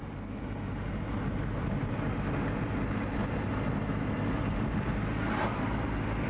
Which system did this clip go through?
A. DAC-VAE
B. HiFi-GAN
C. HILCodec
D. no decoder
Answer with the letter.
D